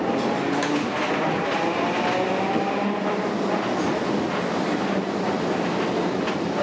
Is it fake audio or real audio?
real